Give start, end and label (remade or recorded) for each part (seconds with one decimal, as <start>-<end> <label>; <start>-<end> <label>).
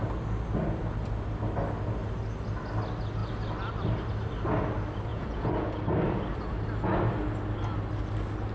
0.0-5.1 recorded; 5.1-5.8 remade; 5.8-8.5 recorded